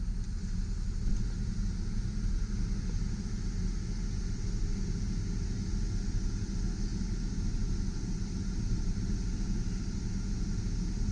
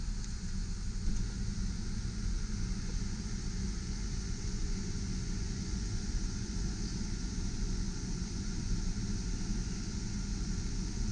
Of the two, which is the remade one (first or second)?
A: second